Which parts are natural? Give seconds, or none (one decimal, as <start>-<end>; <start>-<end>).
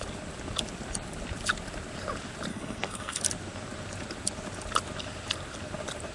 0.0-2.5; 3.2-6.1